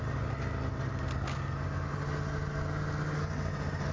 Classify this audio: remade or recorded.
recorded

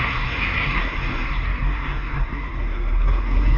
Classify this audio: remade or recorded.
remade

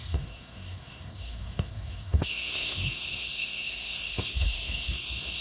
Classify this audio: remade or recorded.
remade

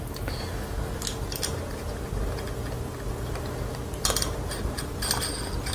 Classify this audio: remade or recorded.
recorded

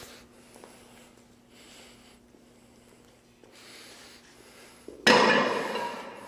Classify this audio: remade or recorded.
recorded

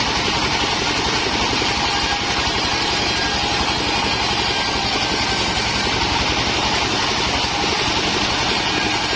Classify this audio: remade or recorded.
recorded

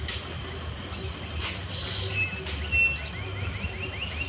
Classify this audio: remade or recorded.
recorded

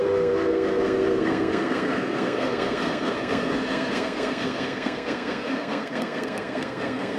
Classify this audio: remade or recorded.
remade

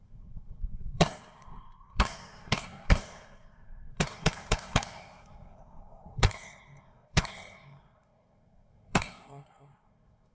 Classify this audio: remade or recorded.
remade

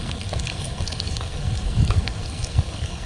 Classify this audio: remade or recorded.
remade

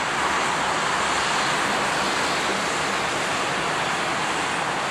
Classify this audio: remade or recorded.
recorded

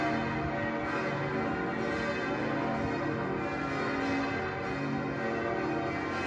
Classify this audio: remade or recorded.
recorded